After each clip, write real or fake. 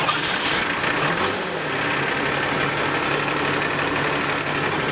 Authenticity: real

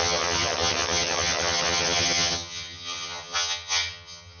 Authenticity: fake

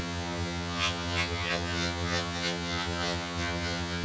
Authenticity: fake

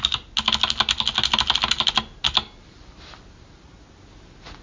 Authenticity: real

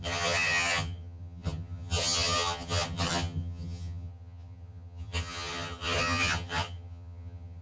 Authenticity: fake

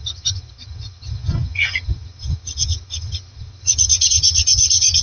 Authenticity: fake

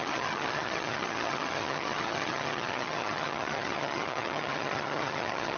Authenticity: fake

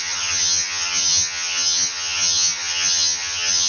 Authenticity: fake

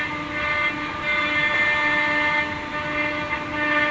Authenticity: real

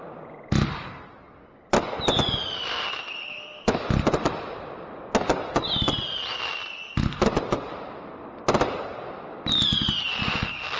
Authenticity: real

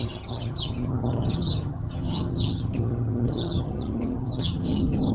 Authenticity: fake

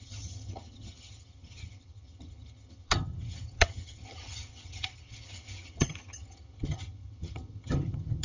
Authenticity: fake